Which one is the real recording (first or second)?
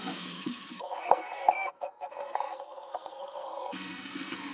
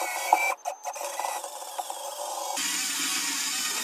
second